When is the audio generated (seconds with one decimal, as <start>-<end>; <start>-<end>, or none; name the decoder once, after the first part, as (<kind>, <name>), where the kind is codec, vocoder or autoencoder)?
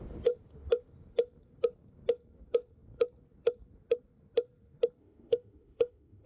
5.0-6.3 (autoencoder, DAC-VAE)